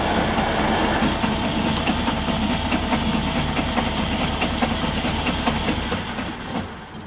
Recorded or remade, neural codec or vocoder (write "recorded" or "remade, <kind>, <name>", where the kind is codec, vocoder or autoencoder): recorded